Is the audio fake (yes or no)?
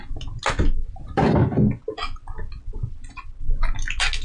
no